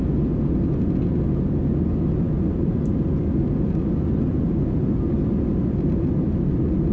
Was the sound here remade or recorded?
recorded